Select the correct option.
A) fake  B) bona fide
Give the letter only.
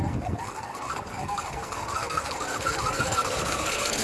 A